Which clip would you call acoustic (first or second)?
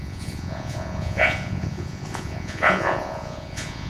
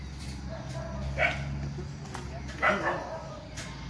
second